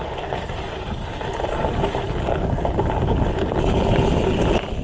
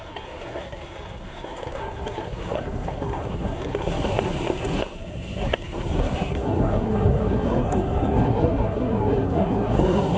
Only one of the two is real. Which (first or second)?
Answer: first